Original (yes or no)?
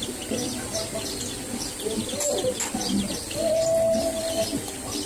yes